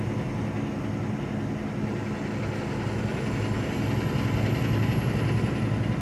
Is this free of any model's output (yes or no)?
yes